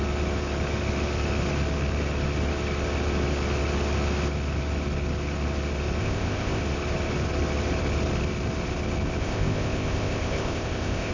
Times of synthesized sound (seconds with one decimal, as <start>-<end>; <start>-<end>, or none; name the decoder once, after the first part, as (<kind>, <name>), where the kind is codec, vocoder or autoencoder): 6.0-6.6 (codec, ZipCodec); 9.2-11.1